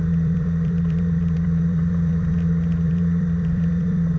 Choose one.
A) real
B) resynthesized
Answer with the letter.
B